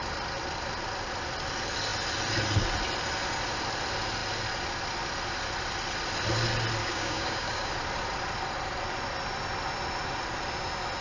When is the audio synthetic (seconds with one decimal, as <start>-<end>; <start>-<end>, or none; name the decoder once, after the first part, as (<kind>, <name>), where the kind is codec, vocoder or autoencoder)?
6.8-7.7 (codec, DAC)

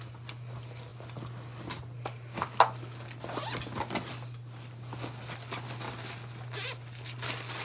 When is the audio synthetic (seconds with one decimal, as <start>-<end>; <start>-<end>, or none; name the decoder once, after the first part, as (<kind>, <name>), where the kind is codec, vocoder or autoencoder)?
none